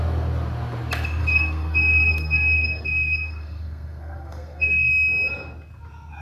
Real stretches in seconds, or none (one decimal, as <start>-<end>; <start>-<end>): 0.0-1.2; 4.9-6.2